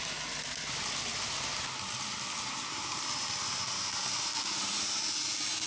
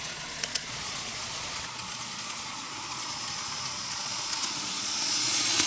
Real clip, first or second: first